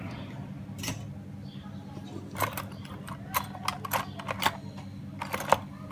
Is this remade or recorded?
recorded